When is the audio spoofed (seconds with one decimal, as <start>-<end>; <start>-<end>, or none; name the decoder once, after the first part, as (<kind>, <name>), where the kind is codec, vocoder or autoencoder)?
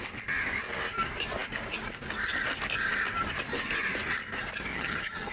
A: 4.7-5.3 (vocoder, HiFi-GAN)